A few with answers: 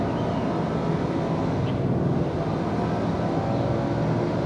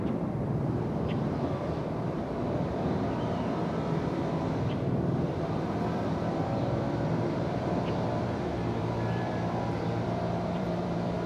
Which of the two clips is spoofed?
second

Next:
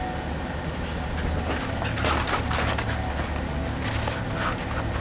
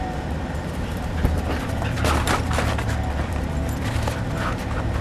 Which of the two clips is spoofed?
second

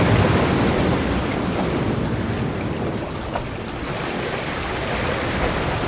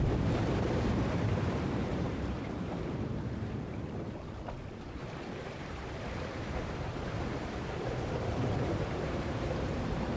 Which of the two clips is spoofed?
second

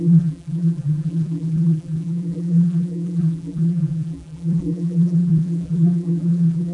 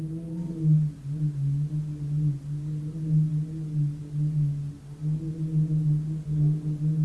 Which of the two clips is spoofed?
first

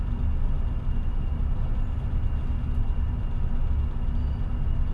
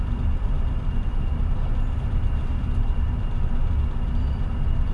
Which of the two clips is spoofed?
second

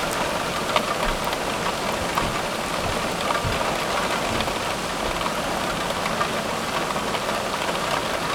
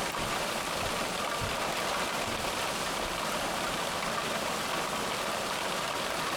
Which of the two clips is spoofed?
second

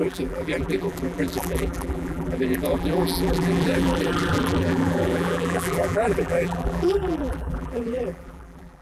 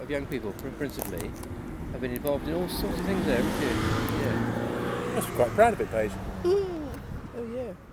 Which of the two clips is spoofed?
first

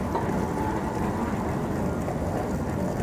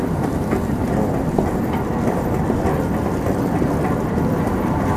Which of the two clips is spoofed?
second